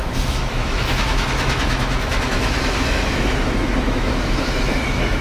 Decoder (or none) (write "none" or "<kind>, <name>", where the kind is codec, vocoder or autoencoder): autoencoder, DAC-VAE